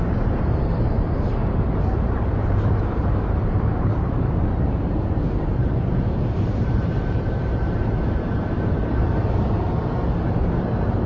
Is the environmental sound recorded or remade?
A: remade